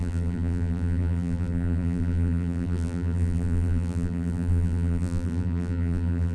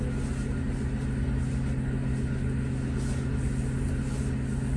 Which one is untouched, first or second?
second